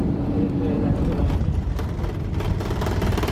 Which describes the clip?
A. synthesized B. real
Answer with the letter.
B